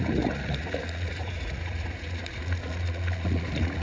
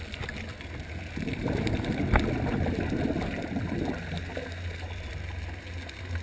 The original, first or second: second